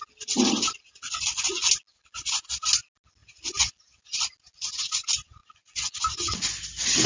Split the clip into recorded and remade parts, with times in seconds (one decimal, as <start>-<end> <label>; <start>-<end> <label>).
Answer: 0.0-5.4 recorded; 5.4-6.4 remade; 6.4-7.1 recorded